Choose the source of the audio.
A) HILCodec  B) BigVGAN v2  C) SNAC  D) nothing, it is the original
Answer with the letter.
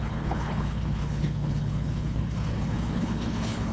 A